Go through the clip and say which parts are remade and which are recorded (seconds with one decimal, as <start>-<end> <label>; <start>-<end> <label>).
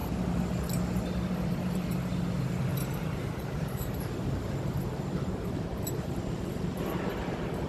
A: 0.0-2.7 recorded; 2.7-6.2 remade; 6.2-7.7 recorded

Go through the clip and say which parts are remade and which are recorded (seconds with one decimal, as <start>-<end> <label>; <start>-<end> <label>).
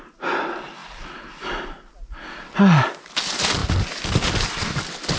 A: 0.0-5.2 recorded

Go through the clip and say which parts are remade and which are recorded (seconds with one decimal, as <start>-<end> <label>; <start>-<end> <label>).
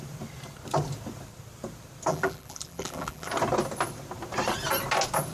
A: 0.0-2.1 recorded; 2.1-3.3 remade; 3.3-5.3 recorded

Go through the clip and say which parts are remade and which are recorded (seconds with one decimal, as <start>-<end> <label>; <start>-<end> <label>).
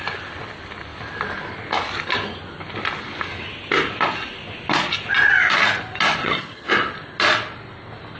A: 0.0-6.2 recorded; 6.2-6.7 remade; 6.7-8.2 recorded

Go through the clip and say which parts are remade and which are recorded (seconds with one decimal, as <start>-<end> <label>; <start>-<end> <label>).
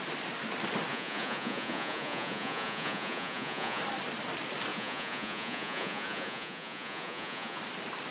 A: 0.0-0.9 recorded; 0.9-3.8 remade; 3.8-4.7 recorded; 4.7-7.6 remade; 7.6-8.1 recorded